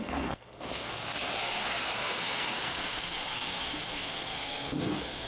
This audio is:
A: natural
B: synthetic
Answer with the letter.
B